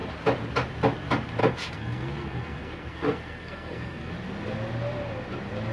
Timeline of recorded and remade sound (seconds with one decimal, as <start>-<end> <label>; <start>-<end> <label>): 0.0-1.4 recorded; 1.4-4.1 remade; 4.1-5.7 recorded